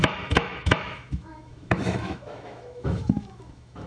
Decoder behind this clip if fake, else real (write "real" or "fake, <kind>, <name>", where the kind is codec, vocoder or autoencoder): fake, autoencoder, DAC-VAE